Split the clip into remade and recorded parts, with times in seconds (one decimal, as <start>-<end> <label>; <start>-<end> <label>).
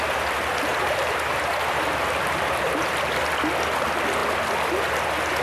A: 0.0-5.4 recorded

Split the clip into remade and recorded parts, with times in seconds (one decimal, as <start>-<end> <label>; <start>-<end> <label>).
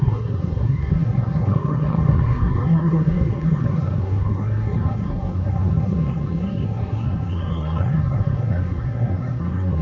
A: 0.0-9.8 remade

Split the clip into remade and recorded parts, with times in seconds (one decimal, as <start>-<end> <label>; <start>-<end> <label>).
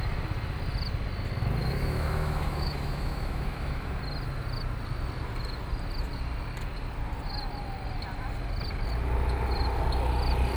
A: 0.0-1.6 recorded; 1.6-4.0 remade; 4.0-10.6 recorded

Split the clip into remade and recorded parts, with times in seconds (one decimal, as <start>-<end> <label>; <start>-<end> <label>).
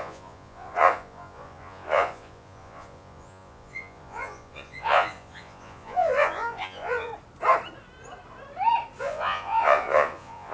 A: 0.0-7.1 remade; 7.1-9.0 recorded; 9.0-10.5 remade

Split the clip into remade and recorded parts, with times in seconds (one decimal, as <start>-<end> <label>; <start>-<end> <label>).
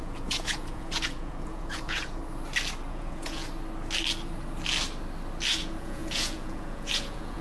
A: 0.0-2.2 remade; 2.2-2.9 recorded; 2.9-3.4 remade; 3.4-5.5 recorded; 5.5-7.4 remade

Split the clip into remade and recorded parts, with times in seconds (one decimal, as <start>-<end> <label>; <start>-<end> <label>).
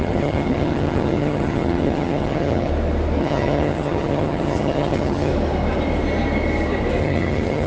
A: 0.0-2.7 remade; 2.7-3.2 recorded; 3.2-5.3 remade; 5.3-7.0 recorded; 7.0-7.7 remade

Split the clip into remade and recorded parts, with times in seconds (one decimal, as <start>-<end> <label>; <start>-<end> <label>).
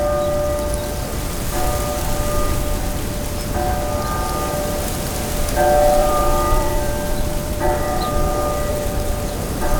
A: 0.0-6.0 recorded; 6.0-7.8 remade; 7.8-8.7 recorded; 8.7-9.8 remade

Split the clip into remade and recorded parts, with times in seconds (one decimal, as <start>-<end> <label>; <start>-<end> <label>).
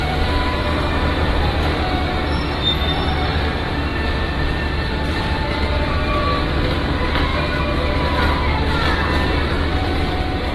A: 0.0-3.9 remade; 3.9-4.5 recorded; 4.5-7.3 remade; 7.3-9.5 recorded; 9.5-10.5 remade